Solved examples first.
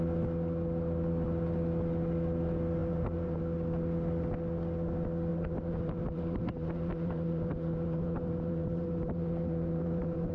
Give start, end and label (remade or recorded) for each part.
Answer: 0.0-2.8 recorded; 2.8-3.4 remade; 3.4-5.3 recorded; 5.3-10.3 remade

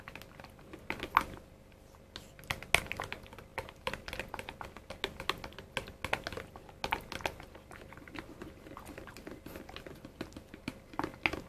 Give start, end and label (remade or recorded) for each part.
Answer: 0.0-11.5 recorded

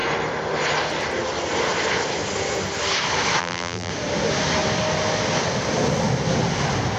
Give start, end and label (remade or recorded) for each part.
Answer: 0.0-3.4 recorded; 3.4-3.9 remade; 3.9-7.0 recorded

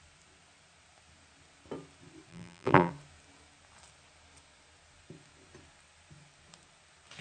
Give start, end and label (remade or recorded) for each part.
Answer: 0.0-2.3 recorded; 2.3-2.9 remade; 2.9-7.2 recorded

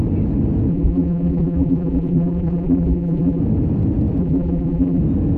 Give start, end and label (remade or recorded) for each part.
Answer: 0.0-0.7 recorded; 0.7-3.4 remade; 3.4-4.2 recorded; 4.2-5.0 remade; 5.0-5.4 recorded

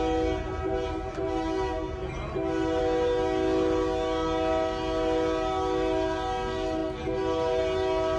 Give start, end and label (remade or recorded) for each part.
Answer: 0.0-8.2 recorded

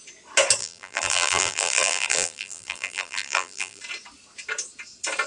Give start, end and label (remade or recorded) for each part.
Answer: 0.0-0.6 recorded; 0.6-3.8 remade; 3.8-5.3 recorded

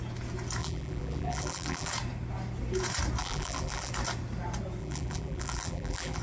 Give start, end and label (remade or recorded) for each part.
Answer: 0.0-0.6 recorded; 0.6-1.9 remade; 1.9-3.2 recorded; 3.2-3.9 remade; 3.9-4.8 recorded; 4.8-6.2 remade